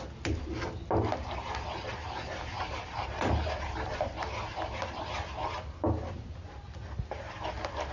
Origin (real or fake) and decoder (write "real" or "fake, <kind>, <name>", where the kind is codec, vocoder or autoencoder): real